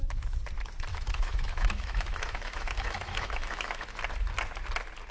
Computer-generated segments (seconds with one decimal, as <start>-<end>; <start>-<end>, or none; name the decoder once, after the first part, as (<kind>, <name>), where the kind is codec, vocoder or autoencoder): 0.9-4.0 (autoencoder, DAC-VAE)